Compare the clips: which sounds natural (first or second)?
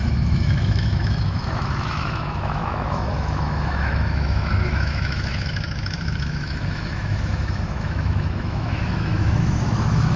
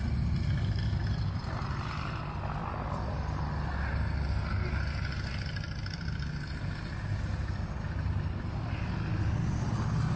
second